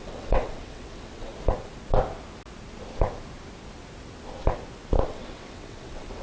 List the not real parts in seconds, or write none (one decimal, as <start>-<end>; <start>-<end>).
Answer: 0.0-1.3; 5.0-6.2